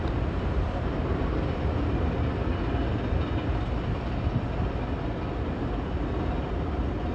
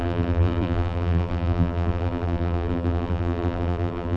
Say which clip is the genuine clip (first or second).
first